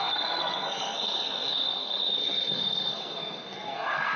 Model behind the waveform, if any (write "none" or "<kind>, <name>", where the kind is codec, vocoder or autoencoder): codec, SNAC